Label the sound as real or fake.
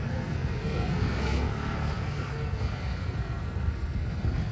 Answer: fake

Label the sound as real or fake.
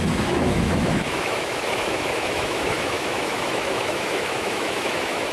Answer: fake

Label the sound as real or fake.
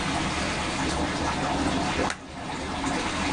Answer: real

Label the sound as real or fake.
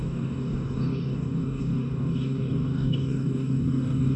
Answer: fake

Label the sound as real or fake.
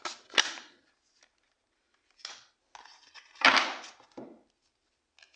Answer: real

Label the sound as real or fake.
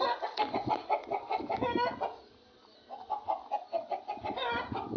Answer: real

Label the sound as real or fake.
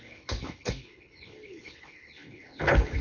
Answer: fake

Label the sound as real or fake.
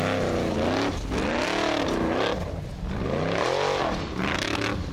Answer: real